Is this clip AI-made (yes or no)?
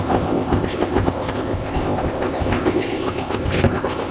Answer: yes